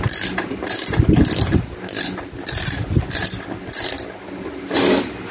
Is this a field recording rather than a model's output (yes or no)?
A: yes